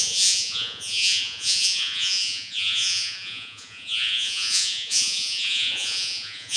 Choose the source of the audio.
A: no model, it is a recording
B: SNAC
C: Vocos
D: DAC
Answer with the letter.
C